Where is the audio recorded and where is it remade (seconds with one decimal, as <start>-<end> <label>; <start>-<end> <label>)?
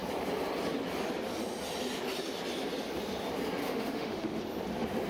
0.0-3.6 recorded; 3.6-4.4 remade; 4.4-5.1 recorded